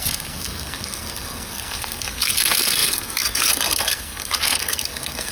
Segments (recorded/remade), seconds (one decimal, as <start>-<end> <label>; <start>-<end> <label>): 0.0-5.3 remade